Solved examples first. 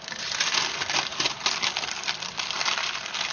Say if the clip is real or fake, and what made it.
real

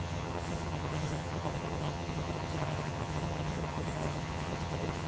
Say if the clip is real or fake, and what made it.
fake, vocoder, HiFi-GAN